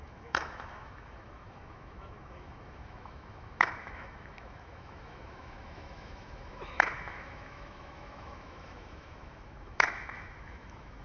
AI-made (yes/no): yes